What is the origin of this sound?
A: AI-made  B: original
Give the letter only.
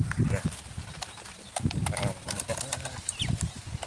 B